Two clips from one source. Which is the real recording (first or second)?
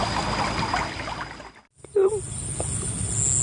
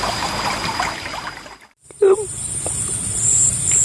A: first